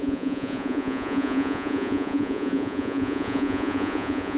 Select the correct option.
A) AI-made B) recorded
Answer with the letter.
A